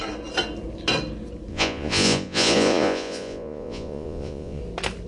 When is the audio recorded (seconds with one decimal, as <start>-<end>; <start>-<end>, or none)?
0.0-1.5; 4.6-5.1